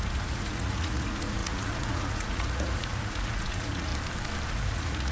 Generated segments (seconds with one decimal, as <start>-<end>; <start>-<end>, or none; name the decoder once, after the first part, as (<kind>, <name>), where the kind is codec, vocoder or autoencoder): 0.0-3.9 (vocoder, Vocos); 4.5-5.1